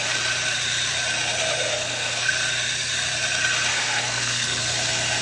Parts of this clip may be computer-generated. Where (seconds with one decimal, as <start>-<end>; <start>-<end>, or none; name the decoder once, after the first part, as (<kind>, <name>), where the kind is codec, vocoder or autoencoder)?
1.7-2.3 (codec, SNAC); 3.7-4.6